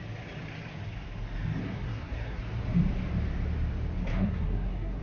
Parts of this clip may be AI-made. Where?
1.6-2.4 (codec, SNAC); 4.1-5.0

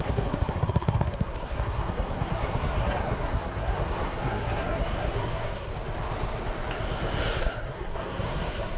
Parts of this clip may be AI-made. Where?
0.0-5.7 (codec, SNAC); 7.4-8.8

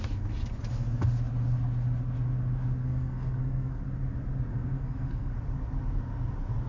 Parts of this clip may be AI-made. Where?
2.8-3.8 (codec, SNAC); 4.5-5.3

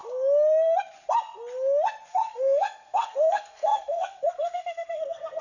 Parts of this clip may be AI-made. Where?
2.1-5.4 (codec, SNAC)

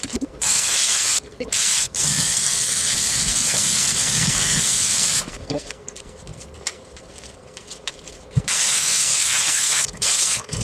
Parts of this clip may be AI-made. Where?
0.0-10.6 (codec, SNAC)

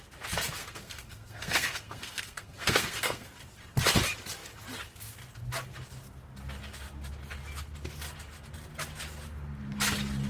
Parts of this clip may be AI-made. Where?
0.6-3.3 (codec, SNAC)

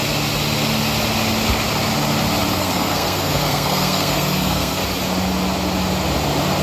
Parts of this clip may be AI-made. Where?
2.6-4.8 (codec, SNAC)